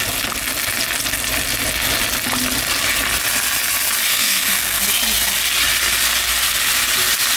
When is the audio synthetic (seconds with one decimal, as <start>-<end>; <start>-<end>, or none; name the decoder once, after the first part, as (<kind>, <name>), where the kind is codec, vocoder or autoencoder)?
4.1-4.8 (codec, SNAC)